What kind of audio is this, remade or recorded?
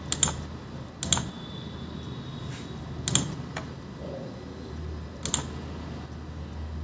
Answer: recorded